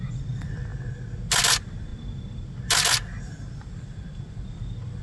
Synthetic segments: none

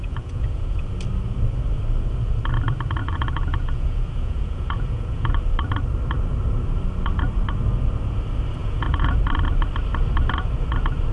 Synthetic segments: 0.0-0.8 (vocoder, Vocos); 3.0-5.4; 8.6-9.2

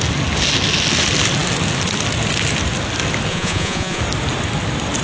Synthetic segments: 3.3-4.0 (vocoder, Vocos)

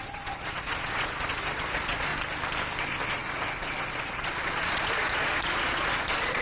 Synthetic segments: 0.0-2.1 (vocoder, Vocos); 2.8-6.4

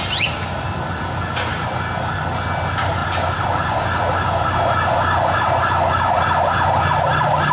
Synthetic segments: none

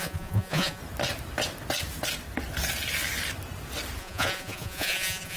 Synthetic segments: 0.0-0.8 (vocoder, Vocos); 4.0-5.4